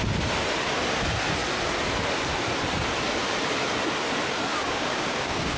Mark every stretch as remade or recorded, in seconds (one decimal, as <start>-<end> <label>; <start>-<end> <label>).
0.0-4.5 recorded; 4.5-5.6 remade